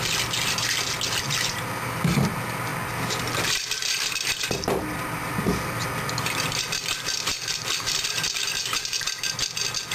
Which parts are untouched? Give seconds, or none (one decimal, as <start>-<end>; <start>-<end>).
0.0-7.3; 8.2-9.9